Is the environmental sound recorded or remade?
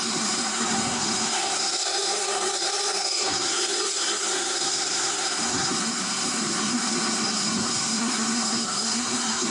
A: remade